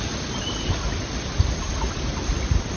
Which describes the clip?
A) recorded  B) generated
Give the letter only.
A